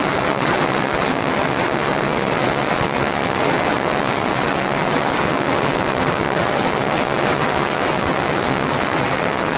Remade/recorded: remade